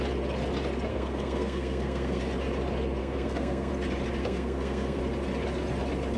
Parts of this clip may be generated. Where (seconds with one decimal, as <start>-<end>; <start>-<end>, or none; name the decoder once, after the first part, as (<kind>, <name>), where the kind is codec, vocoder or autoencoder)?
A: 0.9-2.2 (codec, SNAC); 3.0-3.7; 4.2-5.0